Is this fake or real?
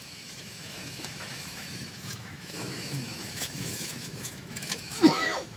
fake